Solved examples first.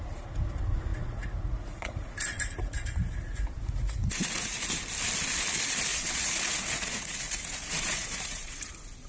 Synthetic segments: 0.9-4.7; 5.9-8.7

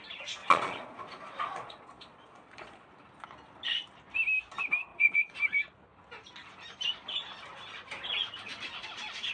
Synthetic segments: 0.4-2.9; 4.9-5.4

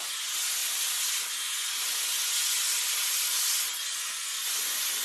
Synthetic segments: 0.0-0.6; 1.3-2.6; 3.6-5.0

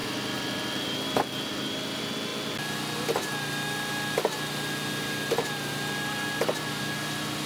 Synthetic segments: none

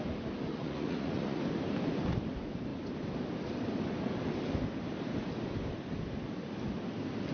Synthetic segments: 0.5-1.4

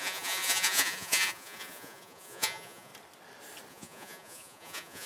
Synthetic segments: 0.0-2.9; 3.7-5.1